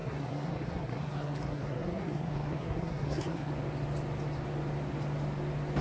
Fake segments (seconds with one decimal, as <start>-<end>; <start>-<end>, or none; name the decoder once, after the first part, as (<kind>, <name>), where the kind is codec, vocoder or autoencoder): 0.0-3.5 (codec, SNAC)